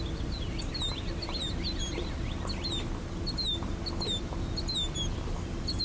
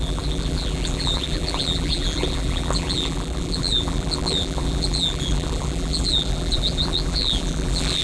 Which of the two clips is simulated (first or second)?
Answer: second